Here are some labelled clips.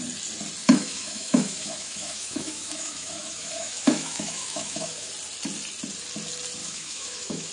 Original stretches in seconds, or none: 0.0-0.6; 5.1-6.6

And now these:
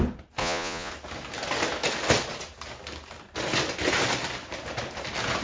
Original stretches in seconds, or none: 0.0-0.4; 0.9-5.4

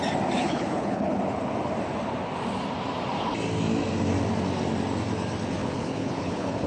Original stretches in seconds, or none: 0.0-0.4; 1.2-5.6

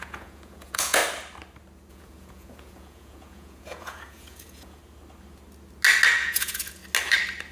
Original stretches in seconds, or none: 1.0-1.9; 4.8-6.2; 6.8-7.5

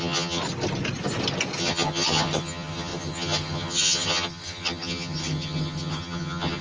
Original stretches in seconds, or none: 0.4-1.6

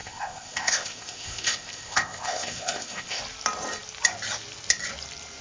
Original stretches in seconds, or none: 3.2-5.4

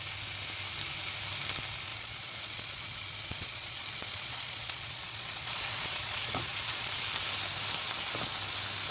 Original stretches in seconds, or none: 0.0-1.9; 7.0-8.9